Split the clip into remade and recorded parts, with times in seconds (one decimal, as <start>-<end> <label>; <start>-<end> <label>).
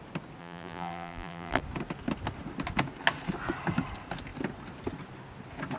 0.0-0.4 recorded; 0.4-1.6 remade; 1.6-5.8 recorded